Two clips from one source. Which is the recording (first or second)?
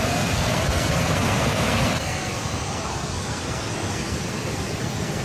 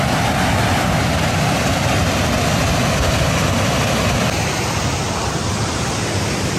second